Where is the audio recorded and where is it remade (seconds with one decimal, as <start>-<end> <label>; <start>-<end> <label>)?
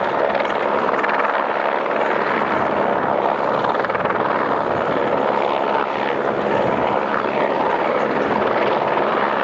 0.0-9.4 recorded